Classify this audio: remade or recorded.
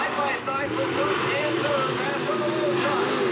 remade